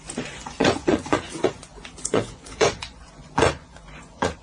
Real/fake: fake